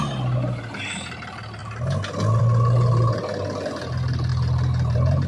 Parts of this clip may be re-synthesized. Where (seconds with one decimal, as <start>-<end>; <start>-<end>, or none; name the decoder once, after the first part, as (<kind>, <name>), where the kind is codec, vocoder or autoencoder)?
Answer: none